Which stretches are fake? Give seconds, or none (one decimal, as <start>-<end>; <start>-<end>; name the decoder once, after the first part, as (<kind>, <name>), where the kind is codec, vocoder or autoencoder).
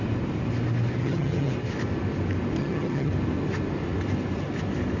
1.0-1.5 (vocoder, HiFi-GAN); 2.6-3.1